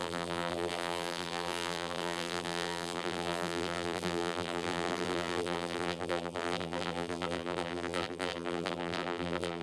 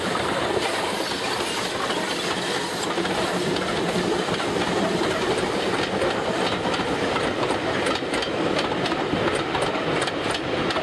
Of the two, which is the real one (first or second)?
second